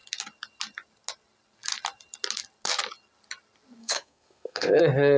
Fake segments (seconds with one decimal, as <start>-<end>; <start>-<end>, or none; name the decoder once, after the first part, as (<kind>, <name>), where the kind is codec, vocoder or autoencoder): 3.8-4.8 (codec, SNAC)